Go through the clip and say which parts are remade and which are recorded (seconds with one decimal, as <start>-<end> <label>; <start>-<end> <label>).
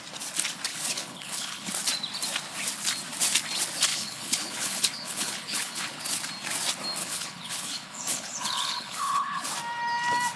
0.0-0.7 recorded; 0.7-1.7 remade; 1.7-3.9 recorded; 3.9-6.0 remade; 6.0-7.0 recorded; 7.0-9.5 remade; 9.5-10.4 recorded